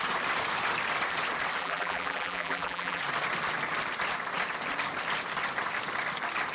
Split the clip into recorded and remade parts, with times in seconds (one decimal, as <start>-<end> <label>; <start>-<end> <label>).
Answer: 0.0-1.6 recorded; 1.6-3.0 remade; 3.0-6.5 recorded